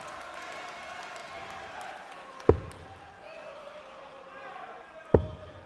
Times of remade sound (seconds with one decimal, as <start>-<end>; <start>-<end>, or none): none